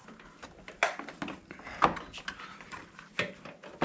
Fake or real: real